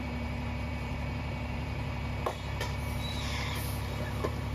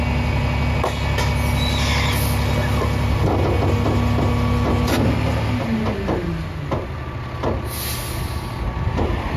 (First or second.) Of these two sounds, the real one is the second